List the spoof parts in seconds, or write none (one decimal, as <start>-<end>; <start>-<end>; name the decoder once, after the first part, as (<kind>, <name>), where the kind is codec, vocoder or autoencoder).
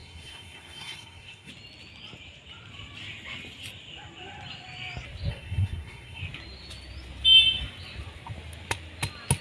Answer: 0.0-1.5 (codec, SNAC); 5.3-6.2